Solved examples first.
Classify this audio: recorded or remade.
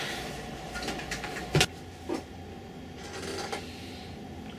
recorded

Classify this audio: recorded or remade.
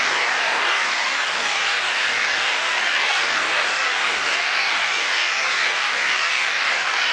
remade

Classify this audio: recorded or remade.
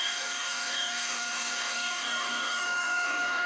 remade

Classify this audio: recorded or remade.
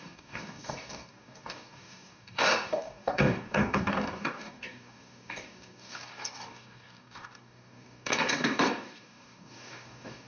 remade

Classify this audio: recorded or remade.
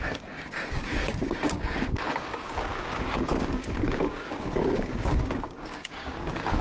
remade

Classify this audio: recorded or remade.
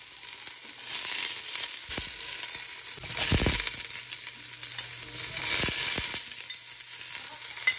recorded